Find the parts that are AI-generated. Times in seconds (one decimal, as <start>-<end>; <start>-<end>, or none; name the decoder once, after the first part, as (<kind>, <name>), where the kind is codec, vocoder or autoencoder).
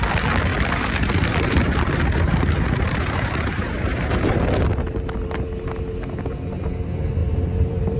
0.5-4.4 (vocoder, BigVGAN v2); 7.2-8.0